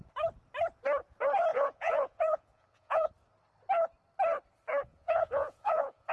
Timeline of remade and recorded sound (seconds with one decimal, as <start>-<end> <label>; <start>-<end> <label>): 0.0-1.5 recorded; 1.5-3.1 remade; 3.1-4.9 recorded; 4.9-6.1 remade